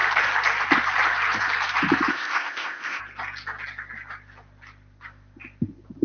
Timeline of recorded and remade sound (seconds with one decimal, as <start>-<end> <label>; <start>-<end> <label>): 0.0-2.1 recorded; 2.1-3.0 remade; 3.0-6.0 recorded